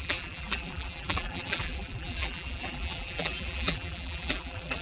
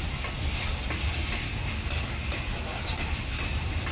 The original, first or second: second